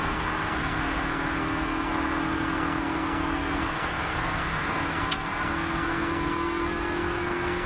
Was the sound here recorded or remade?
remade